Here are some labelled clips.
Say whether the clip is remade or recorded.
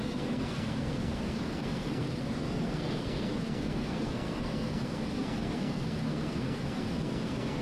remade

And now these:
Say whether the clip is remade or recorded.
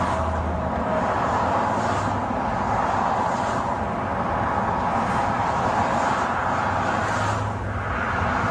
recorded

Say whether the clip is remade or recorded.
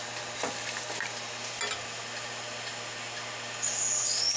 recorded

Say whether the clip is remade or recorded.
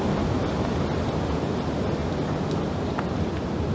recorded